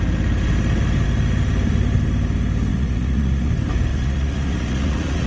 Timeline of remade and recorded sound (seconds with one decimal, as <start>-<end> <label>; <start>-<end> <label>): 0.0-2.7 recorded; 2.7-3.5 remade; 3.5-3.9 recorded; 3.9-5.3 remade